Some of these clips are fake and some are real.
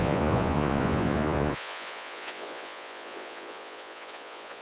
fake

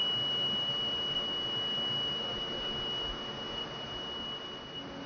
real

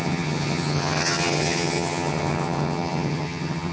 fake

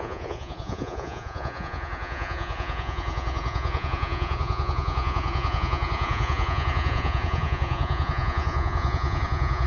fake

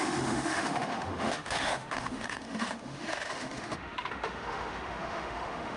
fake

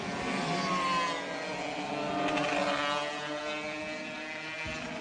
real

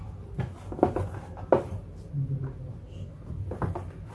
real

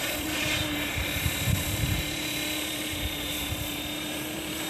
fake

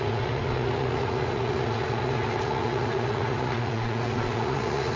fake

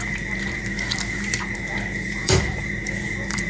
fake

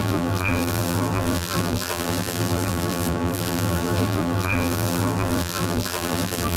fake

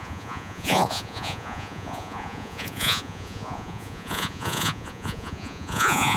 fake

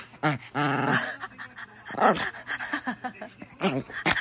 real